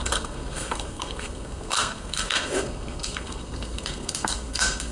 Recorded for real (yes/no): no